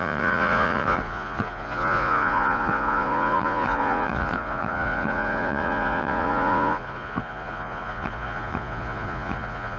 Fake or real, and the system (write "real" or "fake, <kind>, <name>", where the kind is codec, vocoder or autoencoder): fake, vocoder, Vocos